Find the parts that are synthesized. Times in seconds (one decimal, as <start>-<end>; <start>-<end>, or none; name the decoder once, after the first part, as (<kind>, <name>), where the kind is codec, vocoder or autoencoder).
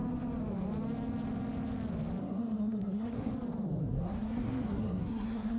2.2-3.3 (codec, SNAC); 3.8-5.6